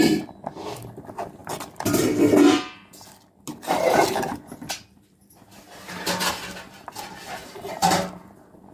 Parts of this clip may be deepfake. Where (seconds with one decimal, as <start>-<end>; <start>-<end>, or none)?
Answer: 7.4-8.0